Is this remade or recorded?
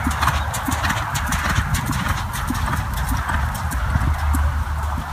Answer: recorded